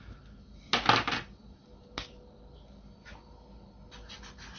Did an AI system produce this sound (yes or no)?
no